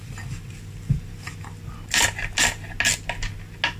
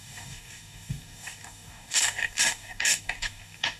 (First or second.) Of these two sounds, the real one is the first